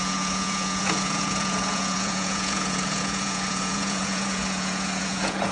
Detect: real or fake fake